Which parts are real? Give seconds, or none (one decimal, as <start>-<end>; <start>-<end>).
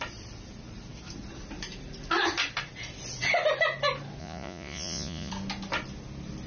0.0-4.2; 5.3-6.5